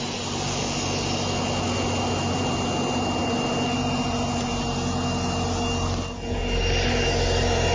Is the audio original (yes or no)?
yes